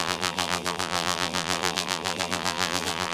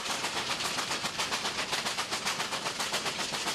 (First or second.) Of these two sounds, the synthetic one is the first